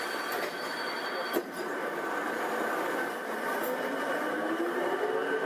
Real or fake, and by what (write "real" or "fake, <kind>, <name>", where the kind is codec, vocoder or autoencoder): real